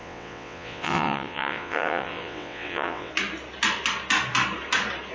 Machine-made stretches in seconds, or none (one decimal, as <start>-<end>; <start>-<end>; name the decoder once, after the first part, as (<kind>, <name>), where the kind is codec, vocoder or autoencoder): 0.0-3.1 (vocoder, WaveNeXt)